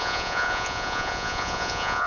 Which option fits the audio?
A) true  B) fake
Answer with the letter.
B